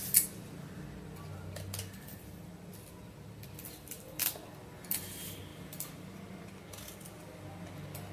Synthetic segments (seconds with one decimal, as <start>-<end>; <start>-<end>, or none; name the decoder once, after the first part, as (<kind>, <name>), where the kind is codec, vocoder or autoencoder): none